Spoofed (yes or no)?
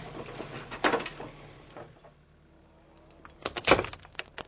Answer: no